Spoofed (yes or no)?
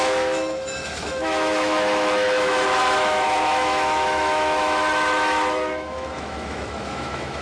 yes